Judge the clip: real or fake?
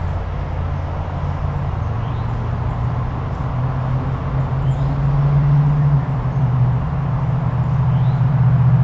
real